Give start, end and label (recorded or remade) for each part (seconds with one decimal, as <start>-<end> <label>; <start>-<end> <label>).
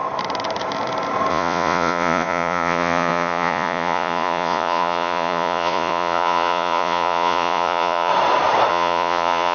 0.0-1.3 recorded; 1.3-8.1 remade; 8.1-8.7 recorded; 8.7-9.5 remade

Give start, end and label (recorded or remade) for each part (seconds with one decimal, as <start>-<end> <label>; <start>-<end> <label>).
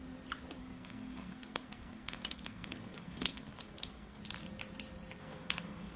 0.0-0.6 recorded; 0.6-4.2 remade; 4.2-5.2 recorded; 5.2-6.0 remade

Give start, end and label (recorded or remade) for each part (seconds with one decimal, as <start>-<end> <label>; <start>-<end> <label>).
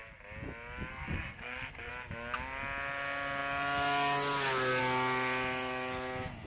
0.0-0.9 recorded; 0.9-1.9 remade; 1.9-6.5 recorded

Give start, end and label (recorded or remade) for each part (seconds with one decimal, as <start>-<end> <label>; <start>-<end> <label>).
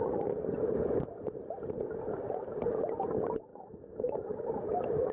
0.0-3.5 recorded; 3.5-4.3 remade; 4.3-5.1 recorded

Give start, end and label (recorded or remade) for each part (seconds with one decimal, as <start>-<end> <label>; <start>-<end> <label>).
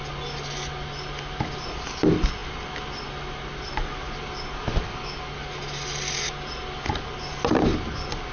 0.0-8.3 recorded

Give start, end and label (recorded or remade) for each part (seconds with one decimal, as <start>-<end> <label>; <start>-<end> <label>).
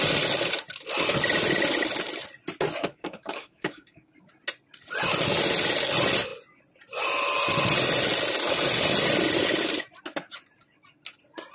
0.0-2.8 recorded; 2.8-4.1 remade; 4.1-11.5 recorded